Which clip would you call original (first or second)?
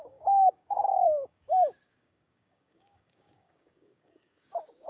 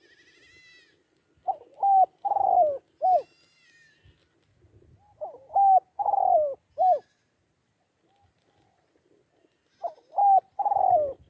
second